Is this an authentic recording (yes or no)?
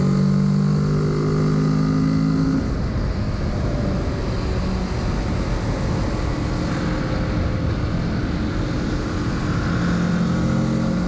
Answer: yes